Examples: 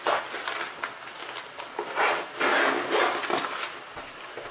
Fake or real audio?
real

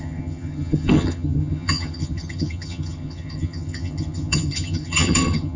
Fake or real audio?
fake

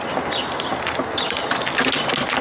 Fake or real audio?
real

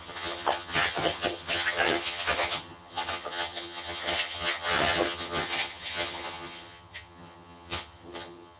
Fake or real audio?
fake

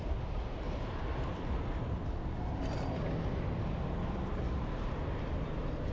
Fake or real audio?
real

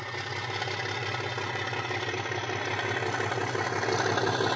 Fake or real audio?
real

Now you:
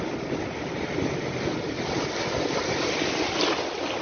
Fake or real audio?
real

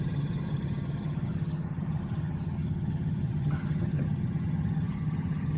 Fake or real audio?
fake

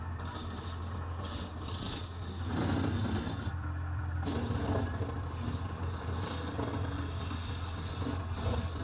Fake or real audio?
real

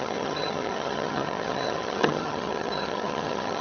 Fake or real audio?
fake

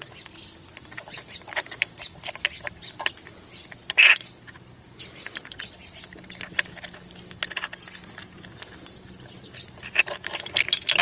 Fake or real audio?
real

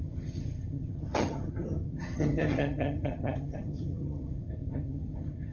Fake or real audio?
fake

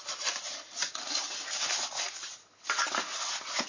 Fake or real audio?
real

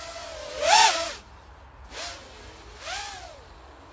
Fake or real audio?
real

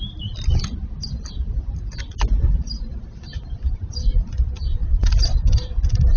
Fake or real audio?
real